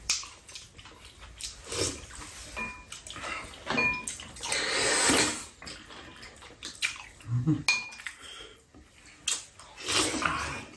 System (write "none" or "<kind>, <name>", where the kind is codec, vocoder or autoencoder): none